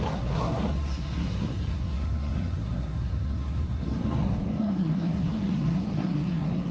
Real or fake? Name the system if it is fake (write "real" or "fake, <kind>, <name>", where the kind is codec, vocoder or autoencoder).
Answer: fake, codec, SNAC